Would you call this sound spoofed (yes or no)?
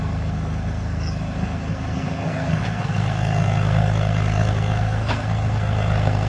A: yes